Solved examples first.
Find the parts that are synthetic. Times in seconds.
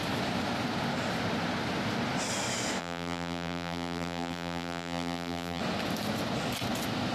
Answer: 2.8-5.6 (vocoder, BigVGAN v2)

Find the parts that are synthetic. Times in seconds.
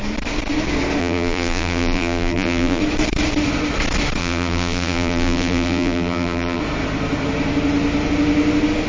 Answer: 1.0-2.8 (vocoder, BigVGAN v2); 4.2-6.6